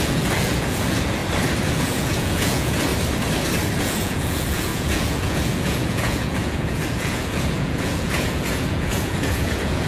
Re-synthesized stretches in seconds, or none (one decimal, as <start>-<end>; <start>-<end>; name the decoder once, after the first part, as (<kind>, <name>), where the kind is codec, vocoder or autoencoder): 0.0-1.2 (vocoder, Vocos); 1.7-2.9; 3.8-9.9